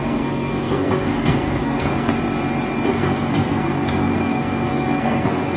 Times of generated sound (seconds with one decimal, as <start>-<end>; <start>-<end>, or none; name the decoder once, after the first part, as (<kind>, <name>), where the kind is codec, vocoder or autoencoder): 0.0-2.1 (codec, SNAC); 2.9-5.6